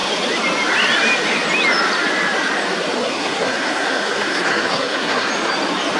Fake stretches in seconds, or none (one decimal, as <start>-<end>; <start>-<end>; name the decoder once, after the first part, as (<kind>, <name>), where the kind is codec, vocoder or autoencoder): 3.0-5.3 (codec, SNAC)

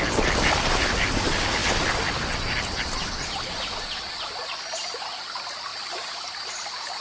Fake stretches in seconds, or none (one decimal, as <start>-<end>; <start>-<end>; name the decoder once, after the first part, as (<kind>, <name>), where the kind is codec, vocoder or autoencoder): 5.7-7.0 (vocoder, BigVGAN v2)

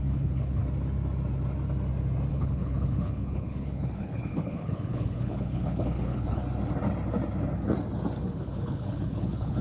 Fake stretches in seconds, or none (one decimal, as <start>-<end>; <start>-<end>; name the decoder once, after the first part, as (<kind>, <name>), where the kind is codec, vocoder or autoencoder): 0.0-0.6 (codec, HILCodec); 2.3-6.4; 8.2-9.6

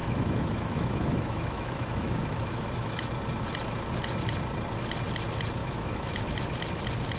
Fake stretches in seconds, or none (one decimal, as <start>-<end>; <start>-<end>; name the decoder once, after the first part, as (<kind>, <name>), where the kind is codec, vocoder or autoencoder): 0.0-3.1 (autoencoder, DAC-VAE); 5.6-6.2

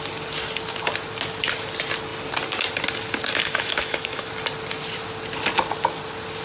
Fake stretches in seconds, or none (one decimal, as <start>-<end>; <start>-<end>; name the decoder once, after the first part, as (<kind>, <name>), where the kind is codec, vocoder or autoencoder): 3.3-4.3 (autoencoder, DAC-VAE)

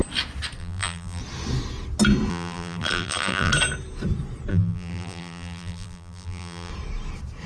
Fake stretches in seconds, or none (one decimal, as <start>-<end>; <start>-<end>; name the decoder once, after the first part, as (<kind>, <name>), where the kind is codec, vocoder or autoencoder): 0.6-1.2 (vocoder, BigVGAN v2); 2.3-3.5; 4.5-6.7